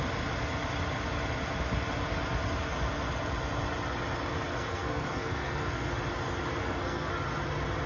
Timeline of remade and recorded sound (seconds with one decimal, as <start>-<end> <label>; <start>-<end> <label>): 0.0-4.5 recorded; 4.5-5.9 remade; 5.9-6.6 recorded; 6.6-7.1 remade; 7.1-7.9 recorded